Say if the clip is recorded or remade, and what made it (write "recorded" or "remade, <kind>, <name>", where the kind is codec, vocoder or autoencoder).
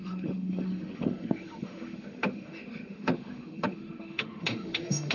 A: remade, autoencoder, DAC-VAE